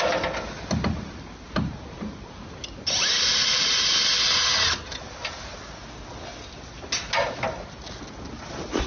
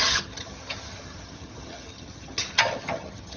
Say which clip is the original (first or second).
first